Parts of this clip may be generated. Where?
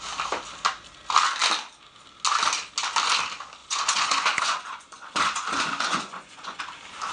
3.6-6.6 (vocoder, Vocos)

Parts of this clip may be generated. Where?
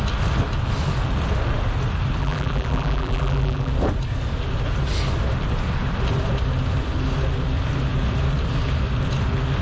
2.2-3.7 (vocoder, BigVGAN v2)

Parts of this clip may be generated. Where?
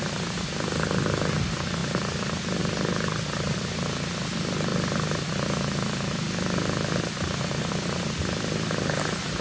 none